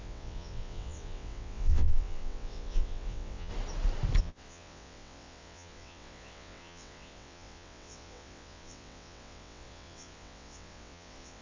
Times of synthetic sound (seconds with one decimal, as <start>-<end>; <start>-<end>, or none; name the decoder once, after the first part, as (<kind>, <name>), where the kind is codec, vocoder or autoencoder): 0.0-3.5 (vocoder, WaveNeXt); 4.2-11.4